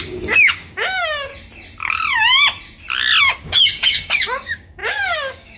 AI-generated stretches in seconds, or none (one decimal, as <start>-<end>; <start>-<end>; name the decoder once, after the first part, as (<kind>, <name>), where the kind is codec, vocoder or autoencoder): 0.0-1.3 (codec, DAC); 3.2-5.6